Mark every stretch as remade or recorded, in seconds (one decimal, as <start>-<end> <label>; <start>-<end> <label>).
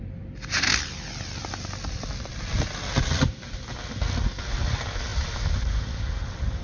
0.0-6.6 recorded